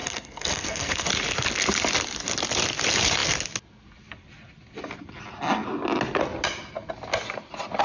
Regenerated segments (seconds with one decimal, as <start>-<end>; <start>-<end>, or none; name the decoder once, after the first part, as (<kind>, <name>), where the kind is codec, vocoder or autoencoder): 0.0-1.1 (codec, SNAC)